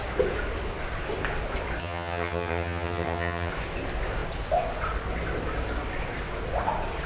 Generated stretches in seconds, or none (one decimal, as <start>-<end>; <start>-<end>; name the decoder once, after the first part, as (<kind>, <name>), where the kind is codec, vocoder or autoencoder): 1.8-3.5 (vocoder, HiFi-GAN)